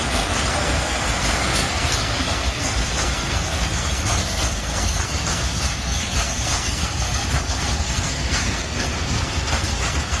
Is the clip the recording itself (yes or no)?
no